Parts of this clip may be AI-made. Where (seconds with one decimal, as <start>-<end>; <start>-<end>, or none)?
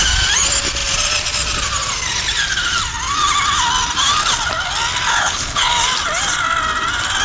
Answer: 5.1-5.7